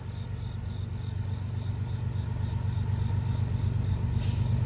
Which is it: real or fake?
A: real